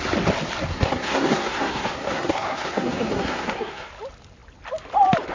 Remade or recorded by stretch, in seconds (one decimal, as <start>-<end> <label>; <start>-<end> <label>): 0.0-0.7 recorded; 0.7-3.9 remade; 3.9-5.3 recorded